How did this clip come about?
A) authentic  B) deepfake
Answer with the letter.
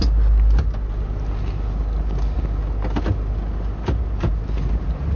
A